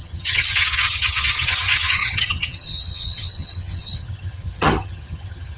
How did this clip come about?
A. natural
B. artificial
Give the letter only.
B